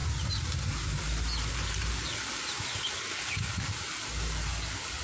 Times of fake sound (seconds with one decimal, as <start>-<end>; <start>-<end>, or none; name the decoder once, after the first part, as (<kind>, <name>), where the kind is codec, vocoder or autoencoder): none